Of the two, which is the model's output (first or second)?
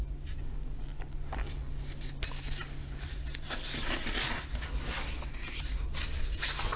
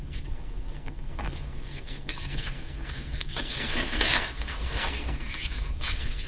second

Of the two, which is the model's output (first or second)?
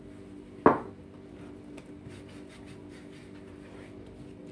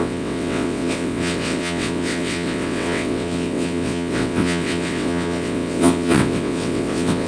second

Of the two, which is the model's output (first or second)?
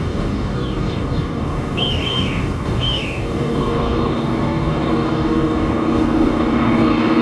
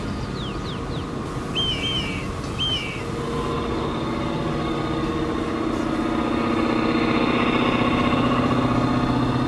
first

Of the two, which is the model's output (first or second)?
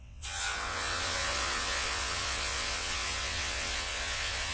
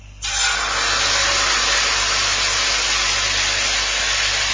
first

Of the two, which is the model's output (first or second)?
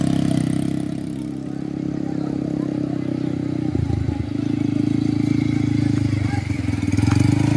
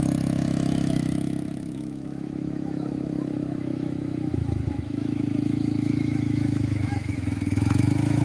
second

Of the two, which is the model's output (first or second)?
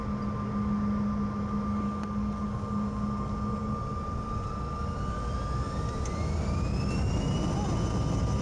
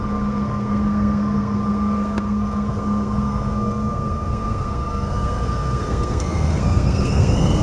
second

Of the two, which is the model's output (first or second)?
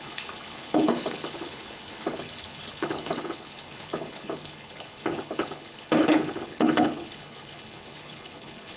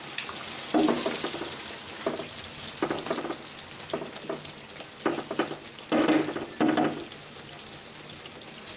first